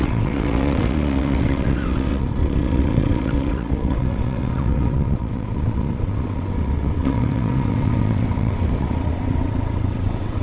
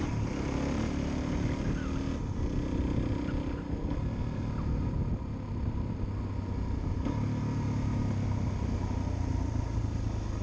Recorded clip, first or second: second